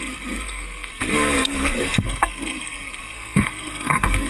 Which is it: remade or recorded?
remade